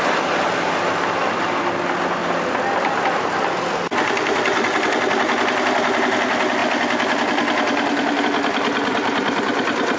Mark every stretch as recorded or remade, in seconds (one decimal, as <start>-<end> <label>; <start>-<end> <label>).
0.0-10.0 recorded